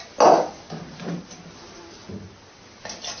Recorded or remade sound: recorded